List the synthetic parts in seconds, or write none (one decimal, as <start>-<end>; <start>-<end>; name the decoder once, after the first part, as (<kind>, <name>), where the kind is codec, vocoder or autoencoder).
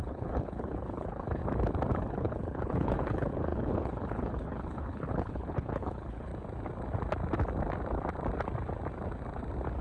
0.0-1.4 (codec, HILCodec); 1.9-6.3